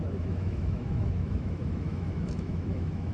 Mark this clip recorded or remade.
remade